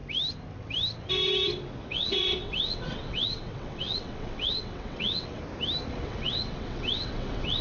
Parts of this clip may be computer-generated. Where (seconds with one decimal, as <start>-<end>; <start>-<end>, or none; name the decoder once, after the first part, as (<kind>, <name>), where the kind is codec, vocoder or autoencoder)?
1.8-5.4 (vocoder, WaveNeXt); 5.9-7.6